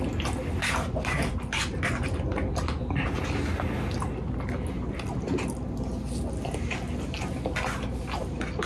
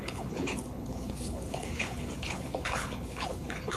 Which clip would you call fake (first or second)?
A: second